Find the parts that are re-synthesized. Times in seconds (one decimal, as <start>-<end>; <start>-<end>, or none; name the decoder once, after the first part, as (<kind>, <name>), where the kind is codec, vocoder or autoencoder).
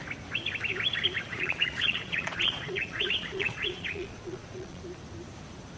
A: 1.3-4.8 (vocoder, Vocos)